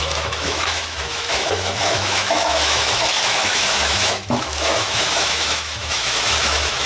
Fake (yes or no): yes